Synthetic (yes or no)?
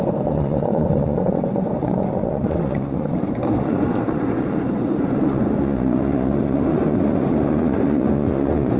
yes